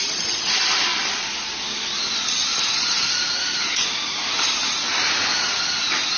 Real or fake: real